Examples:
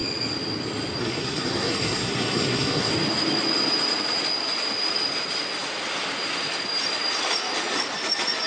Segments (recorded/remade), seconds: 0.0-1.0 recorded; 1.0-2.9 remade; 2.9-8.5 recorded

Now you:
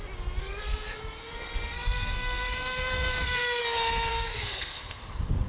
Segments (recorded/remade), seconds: 0.0-0.4 recorded; 0.4-3.6 remade; 3.6-4.1 recorded; 4.1-5.0 remade; 5.0-5.5 recorded